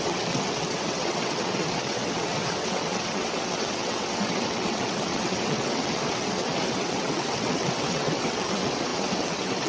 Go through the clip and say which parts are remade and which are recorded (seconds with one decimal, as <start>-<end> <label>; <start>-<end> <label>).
0.0-9.7 remade